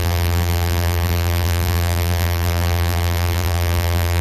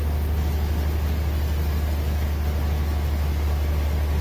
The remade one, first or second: first